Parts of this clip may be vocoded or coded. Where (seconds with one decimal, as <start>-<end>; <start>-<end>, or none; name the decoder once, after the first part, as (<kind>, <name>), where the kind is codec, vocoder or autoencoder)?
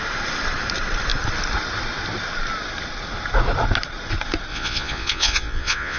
4.5-6.0 (vocoder, Vocos)